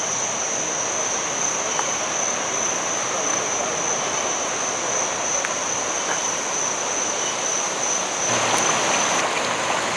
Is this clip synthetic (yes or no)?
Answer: no